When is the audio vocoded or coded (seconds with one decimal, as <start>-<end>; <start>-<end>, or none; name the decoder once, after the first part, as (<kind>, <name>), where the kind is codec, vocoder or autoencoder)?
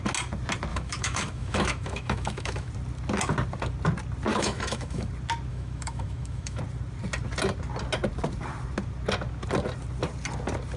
0.7-2.7 (autoencoder, DAC-VAE); 4.3-5.1; 5.5-6.6